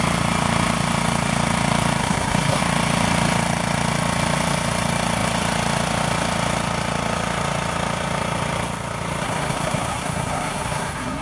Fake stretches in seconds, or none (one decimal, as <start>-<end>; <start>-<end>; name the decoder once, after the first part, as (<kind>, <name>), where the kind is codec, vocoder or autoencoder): 2.0-2.6 (codec, SNAC); 9.2-11.2